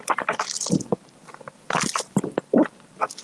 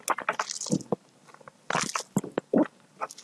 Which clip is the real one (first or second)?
second